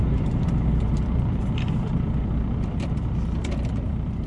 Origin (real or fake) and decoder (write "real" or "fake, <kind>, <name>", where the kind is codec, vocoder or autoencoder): fake, vocoder, BigVGAN v2